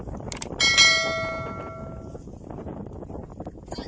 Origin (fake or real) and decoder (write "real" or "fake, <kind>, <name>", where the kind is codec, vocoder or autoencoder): real